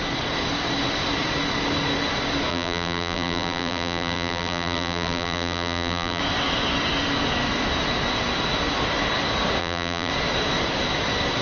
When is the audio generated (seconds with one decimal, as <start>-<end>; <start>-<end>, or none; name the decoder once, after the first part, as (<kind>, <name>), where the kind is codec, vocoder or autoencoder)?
2.5-6.2 (vocoder, BigVGAN v2); 9.6-10.1